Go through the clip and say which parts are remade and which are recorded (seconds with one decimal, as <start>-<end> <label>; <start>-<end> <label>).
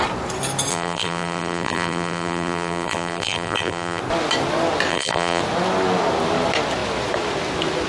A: 0.0-0.7 recorded; 0.7-4.0 remade; 4.0-4.9 recorded; 4.9-5.4 remade; 5.4-7.9 recorded